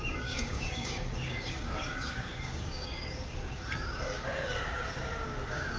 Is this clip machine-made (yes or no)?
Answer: yes